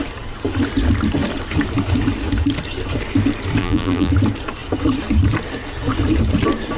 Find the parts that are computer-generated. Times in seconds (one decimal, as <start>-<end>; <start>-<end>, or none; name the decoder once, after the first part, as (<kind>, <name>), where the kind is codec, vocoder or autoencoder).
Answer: 3.6-4.1 (vocoder, BigVGAN v2)